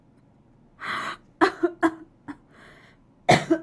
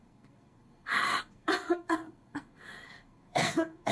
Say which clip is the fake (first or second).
second